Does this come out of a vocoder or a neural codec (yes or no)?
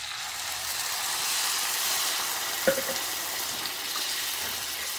no